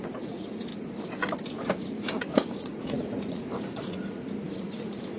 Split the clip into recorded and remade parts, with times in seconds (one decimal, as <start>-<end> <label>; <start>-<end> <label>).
0.0-0.7 remade; 0.7-2.2 recorded; 2.2-5.2 remade